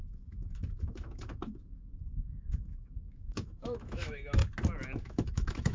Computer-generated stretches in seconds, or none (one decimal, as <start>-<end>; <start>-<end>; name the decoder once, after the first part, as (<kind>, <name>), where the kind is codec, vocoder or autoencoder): 0.0-4.4 (autoencoder, DAC-VAE); 5.0-5.7